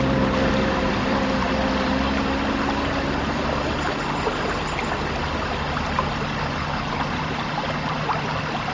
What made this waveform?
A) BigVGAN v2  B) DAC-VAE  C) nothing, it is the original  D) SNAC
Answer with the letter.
C